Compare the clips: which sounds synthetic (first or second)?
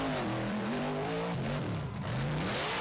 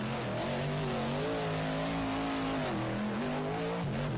first